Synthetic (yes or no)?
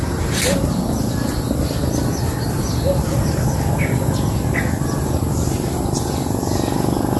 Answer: no